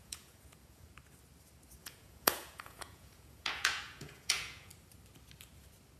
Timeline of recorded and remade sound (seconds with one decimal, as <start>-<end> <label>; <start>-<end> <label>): 0.0-0.9 remade; 0.9-1.8 recorded; 1.8-4.7 remade; 4.7-6.0 recorded